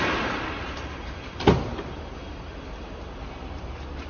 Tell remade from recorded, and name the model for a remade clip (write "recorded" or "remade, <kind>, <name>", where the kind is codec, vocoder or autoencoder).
remade, vocoder, BigVGAN v2